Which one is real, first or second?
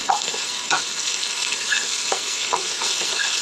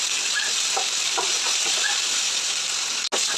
second